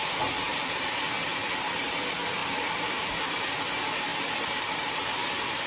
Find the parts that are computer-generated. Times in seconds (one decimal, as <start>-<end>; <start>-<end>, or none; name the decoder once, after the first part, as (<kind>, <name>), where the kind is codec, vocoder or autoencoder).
2.4-3.4 (vocoder, BigVGAN v2); 4.1-5.7